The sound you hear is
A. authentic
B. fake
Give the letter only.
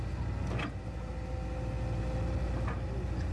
A